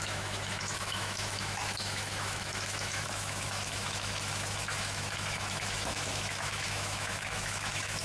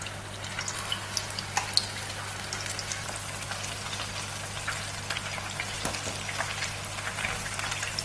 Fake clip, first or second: first